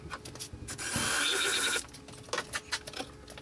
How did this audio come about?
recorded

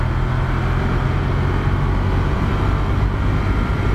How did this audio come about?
recorded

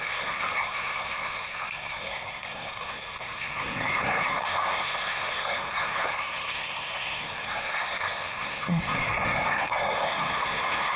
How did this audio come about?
remade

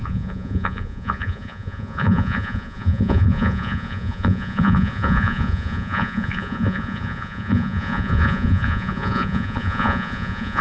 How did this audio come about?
remade